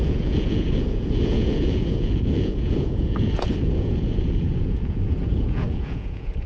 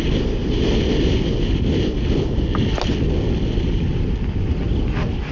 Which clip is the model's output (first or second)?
first